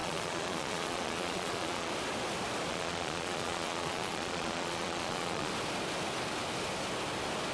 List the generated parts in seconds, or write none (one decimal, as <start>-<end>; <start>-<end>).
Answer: 0.0-1.9; 2.7-5.5